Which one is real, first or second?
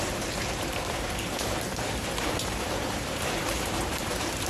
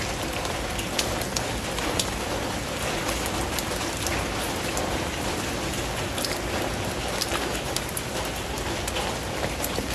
second